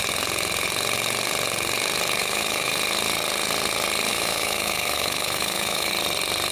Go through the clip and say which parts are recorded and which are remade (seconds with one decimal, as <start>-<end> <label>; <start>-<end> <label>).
0.0-2.2 recorded; 2.2-2.7 remade; 2.7-4.1 recorded; 4.1-5.9 remade; 5.9-6.5 recorded